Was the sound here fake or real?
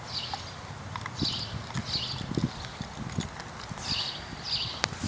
real